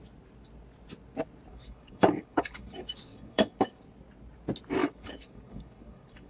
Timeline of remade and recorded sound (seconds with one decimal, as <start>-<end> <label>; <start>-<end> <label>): 0.0-1.5 recorded; 1.5-3.8 remade; 3.8-4.8 recorded; 4.8-6.3 remade